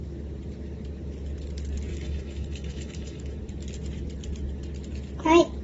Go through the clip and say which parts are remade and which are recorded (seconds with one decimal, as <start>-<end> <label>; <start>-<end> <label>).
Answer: 0.0-1.9 recorded; 1.9-3.4 remade; 3.4-5.6 recorded